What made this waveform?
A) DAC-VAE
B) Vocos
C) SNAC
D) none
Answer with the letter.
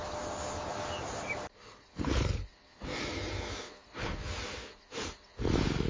D